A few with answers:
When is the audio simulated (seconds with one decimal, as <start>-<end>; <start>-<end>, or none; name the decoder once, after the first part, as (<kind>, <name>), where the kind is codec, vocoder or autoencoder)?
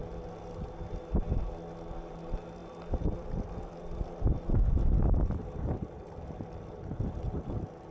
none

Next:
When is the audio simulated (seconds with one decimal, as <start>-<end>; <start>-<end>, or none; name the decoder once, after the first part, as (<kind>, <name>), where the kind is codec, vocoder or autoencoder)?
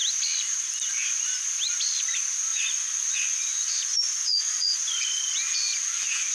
2.5-6.3 (vocoder, Vocos)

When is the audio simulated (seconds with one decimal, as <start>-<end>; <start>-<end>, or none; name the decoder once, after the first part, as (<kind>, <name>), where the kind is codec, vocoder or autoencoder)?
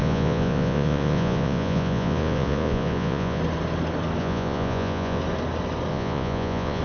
0.0-3.4 (vocoder, Vocos); 4.2-5.2; 5.9-6.8